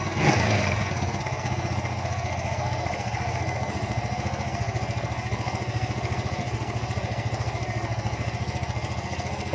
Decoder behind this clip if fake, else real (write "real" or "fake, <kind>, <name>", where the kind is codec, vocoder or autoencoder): fake, codec, SNAC